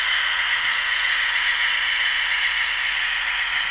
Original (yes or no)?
no